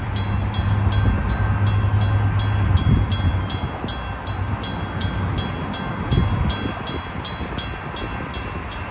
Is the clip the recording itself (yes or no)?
yes